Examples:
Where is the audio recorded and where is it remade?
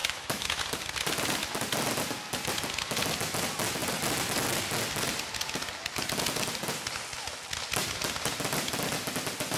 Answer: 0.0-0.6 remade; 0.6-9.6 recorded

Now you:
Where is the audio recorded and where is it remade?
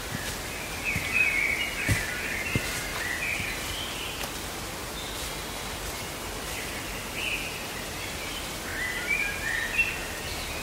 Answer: 0.0-10.6 recorded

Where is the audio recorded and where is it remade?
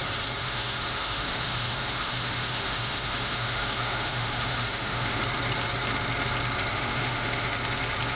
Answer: 0.0-0.4 recorded; 0.4-5.2 remade; 5.2-6.7 recorded; 6.7-7.5 remade; 7.5-8.2 recorded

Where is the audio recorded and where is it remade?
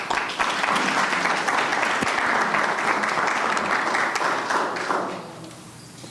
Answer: 0.0-6.1 recorded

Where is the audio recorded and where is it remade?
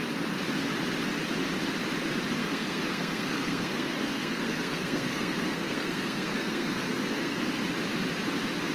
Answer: 0.0-2.4 recorded; 2.4-7.4 remade; 7.4-8.7 recorded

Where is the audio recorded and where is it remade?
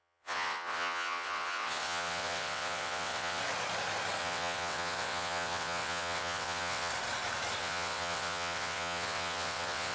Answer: 0.0-3.4 remade; 3.4-4.2 recorded; 4.2-6.9 remade; 6.9-7.6 recorded; 7.6-9.9 remade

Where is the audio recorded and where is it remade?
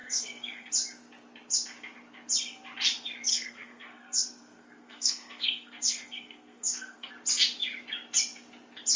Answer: 0.0-0.7 remade; 0.7-3.3 recorded; 3.3-7.1 remade; 7.1-9.0 recorded